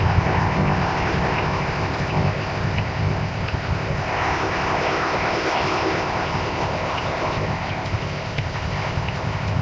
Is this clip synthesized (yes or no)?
yes